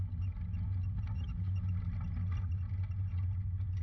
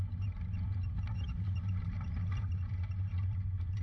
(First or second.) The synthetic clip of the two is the second